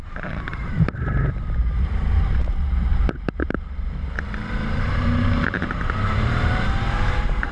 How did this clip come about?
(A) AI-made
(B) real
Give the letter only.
A